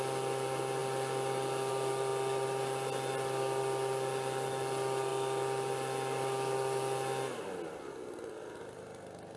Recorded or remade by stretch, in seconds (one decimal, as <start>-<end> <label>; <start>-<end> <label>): 0.0-9.4 recorded